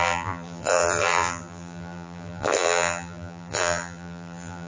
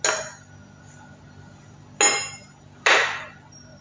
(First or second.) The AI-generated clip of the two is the first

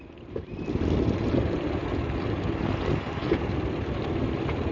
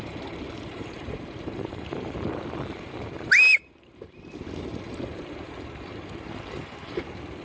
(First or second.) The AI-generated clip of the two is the second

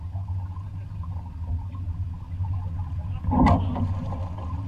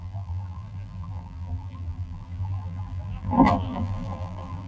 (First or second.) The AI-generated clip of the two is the second